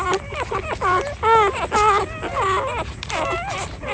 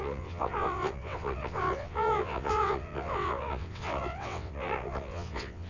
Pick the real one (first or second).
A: first